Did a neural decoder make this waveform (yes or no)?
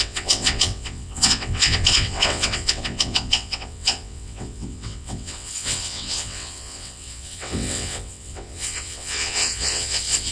yes